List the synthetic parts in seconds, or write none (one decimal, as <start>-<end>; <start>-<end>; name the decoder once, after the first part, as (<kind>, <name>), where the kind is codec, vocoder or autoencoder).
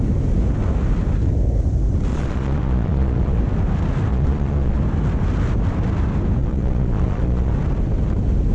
2.1-3.4 (vocoder, Vocos); 4.1-4.8; 6.4-7.5